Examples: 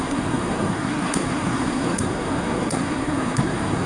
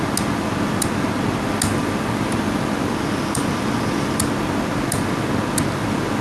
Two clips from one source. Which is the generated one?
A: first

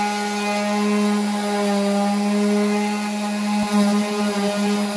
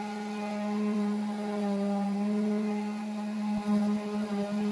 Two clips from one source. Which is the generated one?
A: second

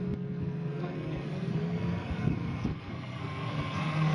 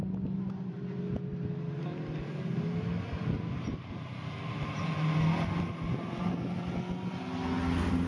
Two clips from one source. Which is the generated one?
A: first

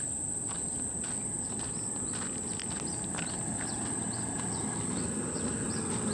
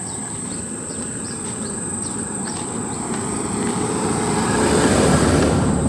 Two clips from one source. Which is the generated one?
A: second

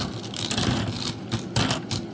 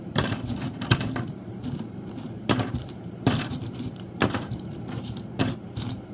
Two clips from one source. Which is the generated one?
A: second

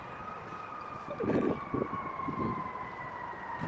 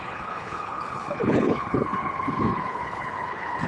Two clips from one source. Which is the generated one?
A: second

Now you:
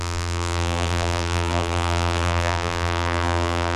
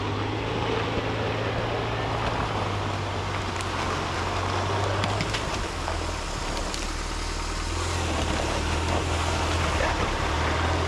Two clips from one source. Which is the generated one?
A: first